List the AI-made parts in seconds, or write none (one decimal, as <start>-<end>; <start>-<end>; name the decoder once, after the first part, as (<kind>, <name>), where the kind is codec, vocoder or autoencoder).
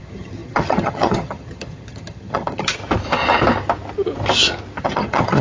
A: 0.0-2.8 (vocoder, HiFi-GAN); 4.8-5.4